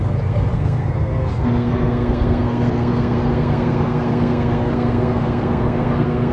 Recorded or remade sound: remade